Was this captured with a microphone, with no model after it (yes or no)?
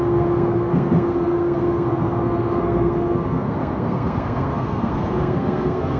no